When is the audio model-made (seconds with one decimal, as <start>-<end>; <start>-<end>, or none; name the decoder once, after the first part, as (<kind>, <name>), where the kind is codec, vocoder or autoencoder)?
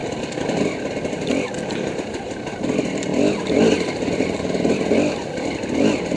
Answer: none